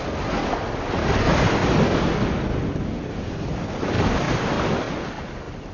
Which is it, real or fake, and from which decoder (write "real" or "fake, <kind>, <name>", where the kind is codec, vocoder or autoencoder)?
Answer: real